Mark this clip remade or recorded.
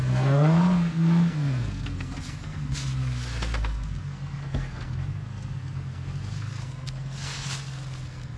remade